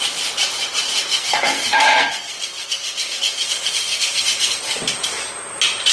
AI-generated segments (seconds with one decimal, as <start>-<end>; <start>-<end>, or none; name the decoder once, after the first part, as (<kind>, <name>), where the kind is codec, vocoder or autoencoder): 1.1-4.6 (codec, SNAC)

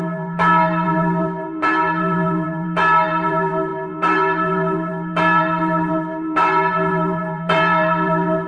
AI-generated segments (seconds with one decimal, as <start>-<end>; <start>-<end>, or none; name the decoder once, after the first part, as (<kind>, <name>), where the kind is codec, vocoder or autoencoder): 0.0-8.5 (vocoder, BigVGAN v2)

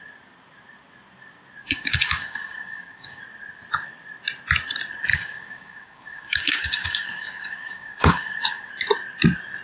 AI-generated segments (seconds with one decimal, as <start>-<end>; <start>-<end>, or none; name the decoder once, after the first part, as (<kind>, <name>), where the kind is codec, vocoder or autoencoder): 1.6-3.2 (codec, DAC); 5.1-8.7